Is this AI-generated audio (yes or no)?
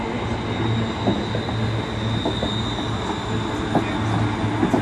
no